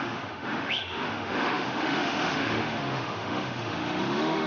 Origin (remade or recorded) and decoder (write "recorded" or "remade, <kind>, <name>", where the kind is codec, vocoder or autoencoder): remade, autoencoder, DAC-VAE